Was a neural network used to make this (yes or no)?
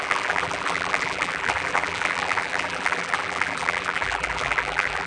yes